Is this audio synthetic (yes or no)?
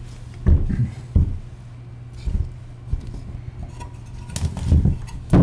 no